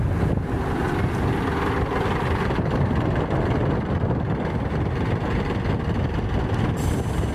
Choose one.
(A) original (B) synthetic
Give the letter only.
A